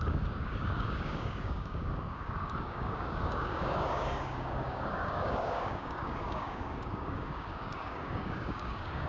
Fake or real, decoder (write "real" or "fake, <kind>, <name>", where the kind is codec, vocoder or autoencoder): fake, codec, DAC